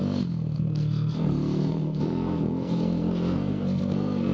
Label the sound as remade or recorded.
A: remade